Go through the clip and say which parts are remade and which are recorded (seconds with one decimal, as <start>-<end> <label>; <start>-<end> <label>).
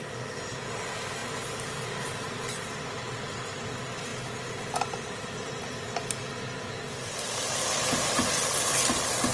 0.0-9.3 recorded